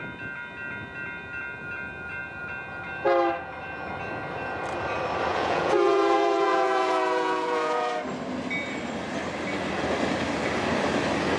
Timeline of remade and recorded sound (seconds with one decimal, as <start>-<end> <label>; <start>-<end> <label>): 0.0-5.3 recorded; 5.3-7.9 remade; 7.9-11.4 recorded